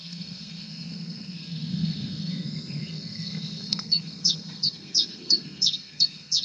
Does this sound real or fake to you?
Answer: fake